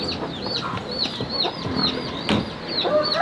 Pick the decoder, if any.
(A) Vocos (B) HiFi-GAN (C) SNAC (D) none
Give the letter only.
D